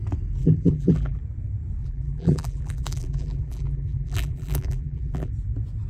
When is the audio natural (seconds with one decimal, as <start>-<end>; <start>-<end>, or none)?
0.0-0.4; 1.2-1.8; 5.3-5.9